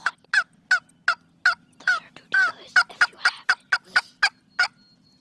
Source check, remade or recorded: recorded